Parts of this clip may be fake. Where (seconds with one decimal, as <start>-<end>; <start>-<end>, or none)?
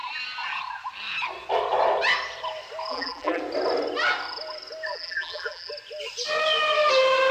2.9-3.4; 4.9-5.7